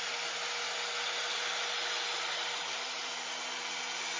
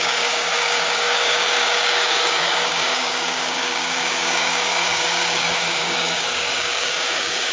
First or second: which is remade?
second